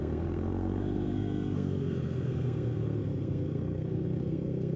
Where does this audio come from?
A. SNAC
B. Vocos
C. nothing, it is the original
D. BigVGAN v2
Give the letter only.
A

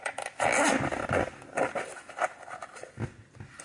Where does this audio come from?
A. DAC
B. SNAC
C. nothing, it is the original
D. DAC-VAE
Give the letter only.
C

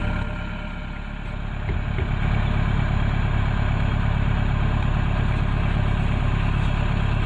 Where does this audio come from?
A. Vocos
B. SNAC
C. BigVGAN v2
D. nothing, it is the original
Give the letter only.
D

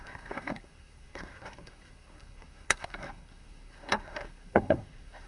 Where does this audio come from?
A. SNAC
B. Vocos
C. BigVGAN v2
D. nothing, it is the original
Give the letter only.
A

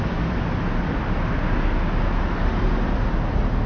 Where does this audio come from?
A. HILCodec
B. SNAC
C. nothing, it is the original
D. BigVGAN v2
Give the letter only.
C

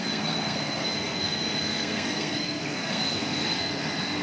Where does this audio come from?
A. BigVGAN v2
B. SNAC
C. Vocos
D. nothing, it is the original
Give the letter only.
B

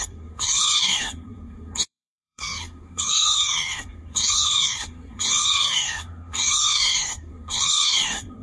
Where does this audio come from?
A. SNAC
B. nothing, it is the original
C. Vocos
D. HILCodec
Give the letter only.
A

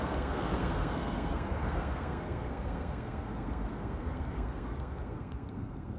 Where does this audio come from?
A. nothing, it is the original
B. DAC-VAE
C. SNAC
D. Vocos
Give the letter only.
C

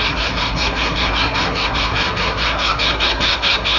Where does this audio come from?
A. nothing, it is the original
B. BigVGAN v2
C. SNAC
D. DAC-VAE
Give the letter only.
C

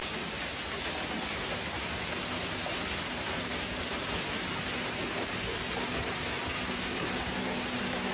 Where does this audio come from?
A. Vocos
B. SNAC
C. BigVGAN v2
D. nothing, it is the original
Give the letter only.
D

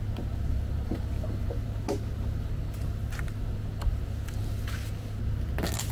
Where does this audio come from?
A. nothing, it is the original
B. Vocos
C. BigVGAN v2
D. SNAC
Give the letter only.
A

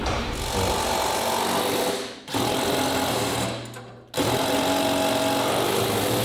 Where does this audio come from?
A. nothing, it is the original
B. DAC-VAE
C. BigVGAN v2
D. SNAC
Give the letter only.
A